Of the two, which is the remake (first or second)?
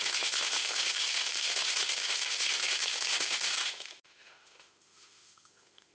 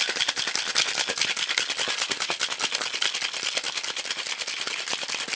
first